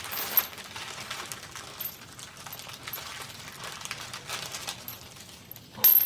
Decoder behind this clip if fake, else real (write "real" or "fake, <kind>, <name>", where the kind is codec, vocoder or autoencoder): real